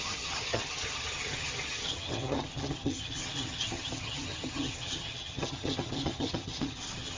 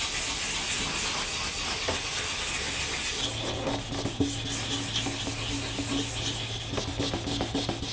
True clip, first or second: second